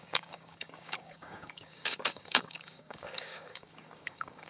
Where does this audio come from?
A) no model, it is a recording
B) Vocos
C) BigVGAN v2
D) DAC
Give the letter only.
D